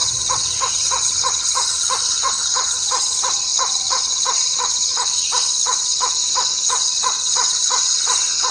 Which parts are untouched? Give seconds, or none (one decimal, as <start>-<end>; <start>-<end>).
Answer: none